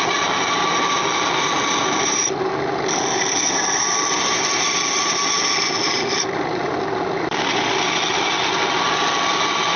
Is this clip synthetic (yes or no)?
no